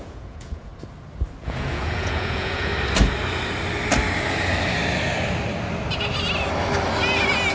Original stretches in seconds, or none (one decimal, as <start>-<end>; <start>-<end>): 0.7-1.4; 2.7-7.5